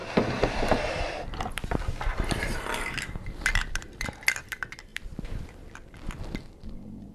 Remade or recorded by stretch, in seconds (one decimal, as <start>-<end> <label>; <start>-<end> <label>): 0.0-1.8 remade; 1.8-2.7 recorded; 2.7-4.1 remade; 4.1-4.9 recorded; 4.9-5.6 remade; 5.6-7.1 recorded